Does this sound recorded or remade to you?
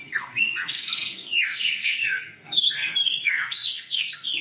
remade